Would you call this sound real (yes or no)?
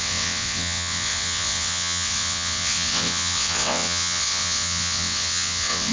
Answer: no